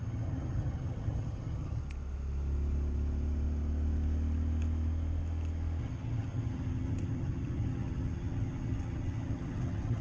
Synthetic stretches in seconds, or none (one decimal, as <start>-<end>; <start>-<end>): 0.0-1.8; 5.8-10.0